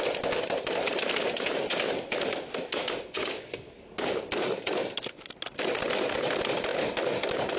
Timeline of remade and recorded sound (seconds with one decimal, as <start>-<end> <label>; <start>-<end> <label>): 0.0-2.8 recorded; 2.8-4.3 remade; 4.3-7.6 recorded